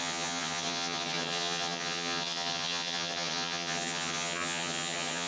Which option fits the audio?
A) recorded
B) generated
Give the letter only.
B